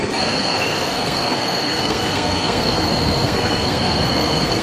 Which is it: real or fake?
fake